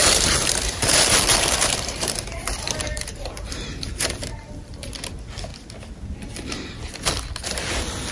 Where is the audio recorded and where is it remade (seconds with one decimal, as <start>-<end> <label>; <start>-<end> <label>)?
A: 0.0-4.9 remade; 4.9-8.1 recorded